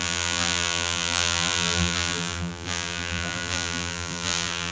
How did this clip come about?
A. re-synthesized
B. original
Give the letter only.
A